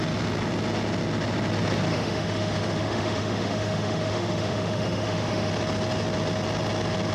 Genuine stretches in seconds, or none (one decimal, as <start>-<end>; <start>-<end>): 0.0-1.9; 5.5-7.1